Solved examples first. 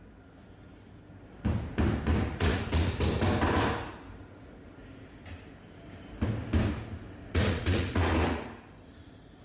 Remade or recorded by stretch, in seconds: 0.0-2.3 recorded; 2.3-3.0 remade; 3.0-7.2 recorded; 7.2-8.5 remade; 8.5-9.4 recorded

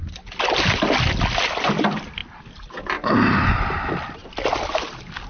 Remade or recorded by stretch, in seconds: 0.0-5.3 recorded